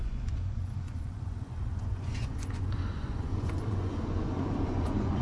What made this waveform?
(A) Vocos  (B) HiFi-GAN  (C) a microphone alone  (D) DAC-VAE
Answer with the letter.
A